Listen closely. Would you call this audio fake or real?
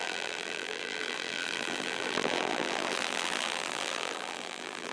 fake